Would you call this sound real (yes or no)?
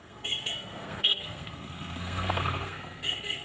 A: no